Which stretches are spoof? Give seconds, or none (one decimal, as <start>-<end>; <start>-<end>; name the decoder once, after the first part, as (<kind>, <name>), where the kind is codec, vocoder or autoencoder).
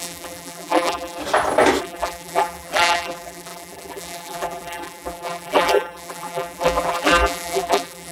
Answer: 0.0-1.2 (vocoder, BigVGAN v2); 1.8-8.1